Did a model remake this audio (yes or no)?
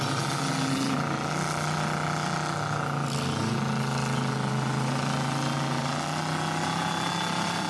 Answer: no